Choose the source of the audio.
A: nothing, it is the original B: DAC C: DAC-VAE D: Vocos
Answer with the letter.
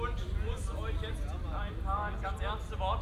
A